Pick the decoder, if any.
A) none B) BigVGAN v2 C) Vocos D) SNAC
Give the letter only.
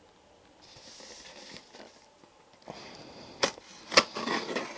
A